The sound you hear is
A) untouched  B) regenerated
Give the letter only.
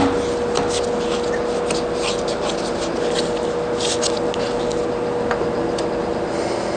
A